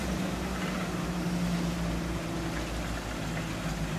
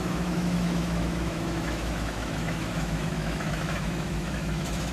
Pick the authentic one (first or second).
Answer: first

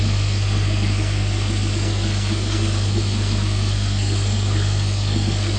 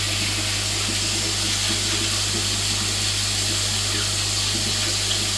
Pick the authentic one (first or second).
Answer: second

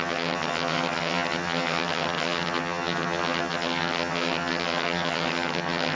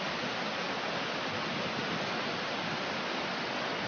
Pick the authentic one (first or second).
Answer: second